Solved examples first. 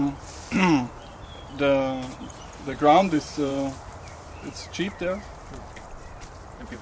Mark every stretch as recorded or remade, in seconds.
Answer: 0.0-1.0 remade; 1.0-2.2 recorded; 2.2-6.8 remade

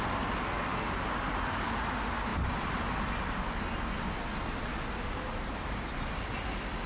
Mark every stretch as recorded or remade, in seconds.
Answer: 0.0-6.9 recorded

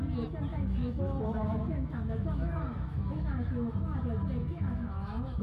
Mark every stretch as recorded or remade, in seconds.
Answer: 0.0-0.5 recorded; 0.5-1.0 remade; 1.0-1.4 recorded; 1.4-3.7 remade; 3.7-4.4 recorded; 4.4-5.4 remade

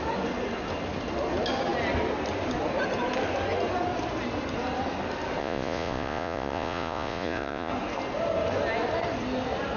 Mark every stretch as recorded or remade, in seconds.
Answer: 0.0-5.4 recorded; 5.4-7.7 remade; 7.7-9.8 recorded

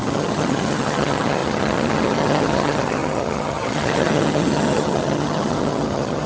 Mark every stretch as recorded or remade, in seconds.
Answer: 0.0-6.3 remade

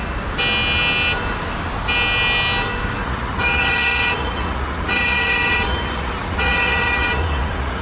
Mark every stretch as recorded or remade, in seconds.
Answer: 0.0-3.0 recorded; 3.0-7.8 remade